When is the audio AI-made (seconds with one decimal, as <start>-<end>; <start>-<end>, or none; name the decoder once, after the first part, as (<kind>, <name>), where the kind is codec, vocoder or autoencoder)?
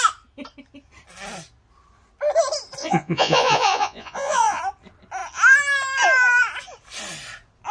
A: 2.8-4.6 (vocoder, Vocos)